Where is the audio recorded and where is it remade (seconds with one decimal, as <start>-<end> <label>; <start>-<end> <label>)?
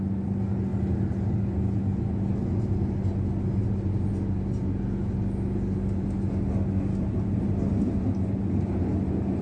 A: 0.0-9.4 recorded